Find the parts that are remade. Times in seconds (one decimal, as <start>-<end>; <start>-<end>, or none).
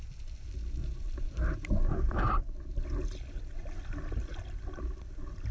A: 0.8-2.4